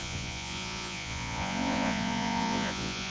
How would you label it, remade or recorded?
remade